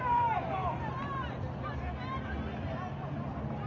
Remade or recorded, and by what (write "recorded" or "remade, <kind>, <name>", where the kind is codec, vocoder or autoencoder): recorded